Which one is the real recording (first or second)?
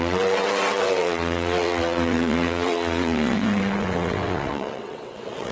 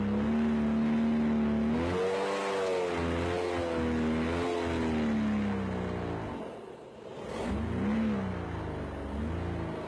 second